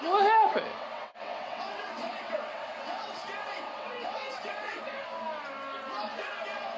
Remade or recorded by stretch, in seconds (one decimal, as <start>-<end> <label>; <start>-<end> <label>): 0.0-0.7 recorded; 0.7-4.8 remade; 4.8-6.8 recorded